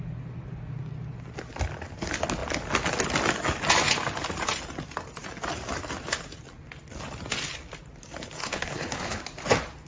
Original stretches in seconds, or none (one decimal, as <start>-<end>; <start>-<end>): 0.0-8.4; 9.2-9.9